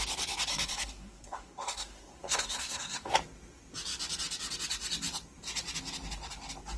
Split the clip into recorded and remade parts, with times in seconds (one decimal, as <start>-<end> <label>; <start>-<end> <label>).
0.0-0.5 recorded; 0.5-3.1 remade; 3.1-6.8 recorded